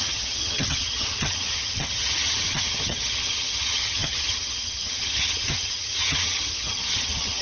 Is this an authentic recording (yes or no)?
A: no